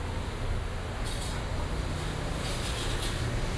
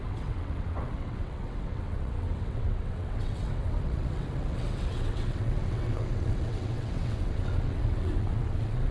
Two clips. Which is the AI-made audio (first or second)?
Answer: second